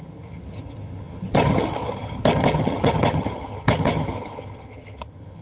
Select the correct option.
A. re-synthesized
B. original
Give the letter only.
A